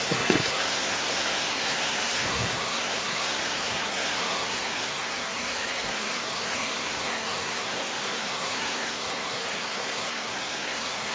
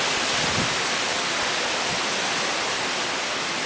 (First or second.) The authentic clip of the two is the second